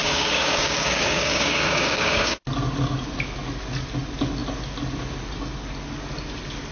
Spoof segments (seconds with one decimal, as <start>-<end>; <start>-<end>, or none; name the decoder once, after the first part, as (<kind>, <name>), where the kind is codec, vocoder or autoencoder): 0.0-2.4 (codec, DAC)